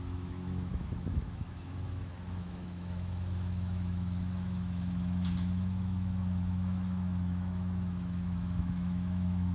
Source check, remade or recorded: remade